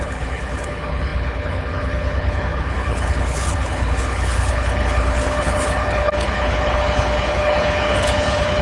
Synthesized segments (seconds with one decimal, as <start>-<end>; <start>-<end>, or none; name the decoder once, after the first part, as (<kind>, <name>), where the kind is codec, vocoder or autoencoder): 0.0-8.6 (codec, HILCodec)